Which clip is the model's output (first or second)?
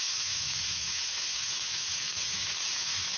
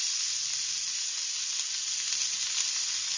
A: first